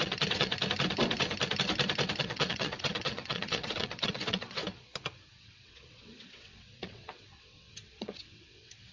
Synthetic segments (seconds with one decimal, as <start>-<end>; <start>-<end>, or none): 0.0-0.5; 2.2-4.6; 5.3-8.9